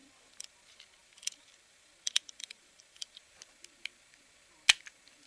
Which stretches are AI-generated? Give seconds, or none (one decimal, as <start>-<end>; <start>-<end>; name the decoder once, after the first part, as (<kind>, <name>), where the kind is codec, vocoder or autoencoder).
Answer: 0.0-3.2 (vocoder, BigVGAN v2)